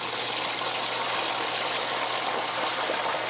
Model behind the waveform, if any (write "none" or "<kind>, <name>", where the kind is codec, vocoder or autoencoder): none